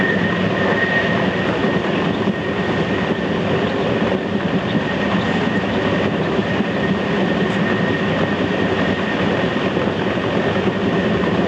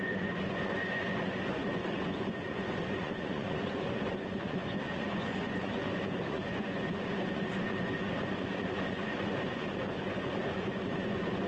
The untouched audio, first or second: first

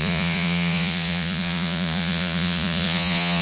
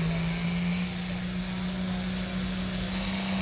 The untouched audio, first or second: second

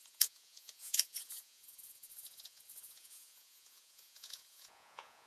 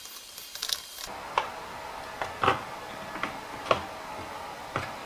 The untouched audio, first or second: second